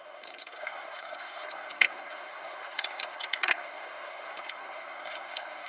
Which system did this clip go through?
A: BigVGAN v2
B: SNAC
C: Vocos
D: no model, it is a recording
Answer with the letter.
B